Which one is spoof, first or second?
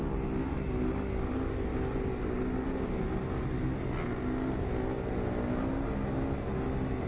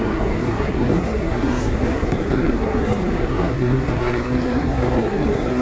second